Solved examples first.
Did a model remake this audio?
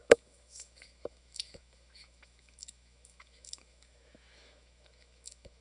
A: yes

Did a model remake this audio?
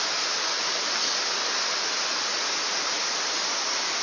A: no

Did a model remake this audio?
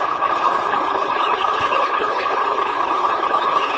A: yes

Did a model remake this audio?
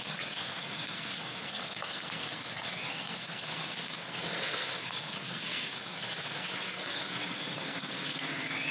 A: yes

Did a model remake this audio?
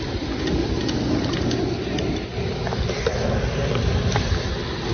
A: no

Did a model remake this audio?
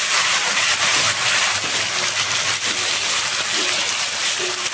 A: no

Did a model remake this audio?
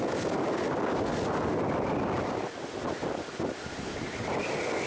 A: no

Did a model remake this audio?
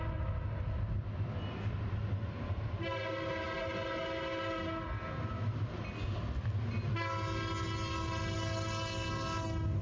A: no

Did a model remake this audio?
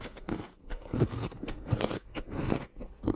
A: yes